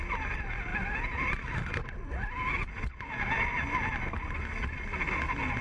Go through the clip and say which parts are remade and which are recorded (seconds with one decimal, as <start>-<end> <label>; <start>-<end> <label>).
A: 0.0-5.6 recorded